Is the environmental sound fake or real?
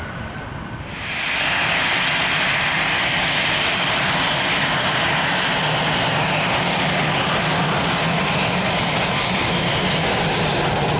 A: real